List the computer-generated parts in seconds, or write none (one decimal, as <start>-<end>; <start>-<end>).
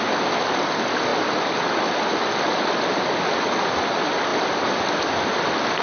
4.3-4.8